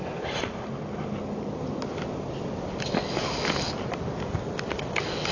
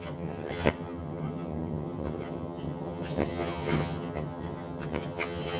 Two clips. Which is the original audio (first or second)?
first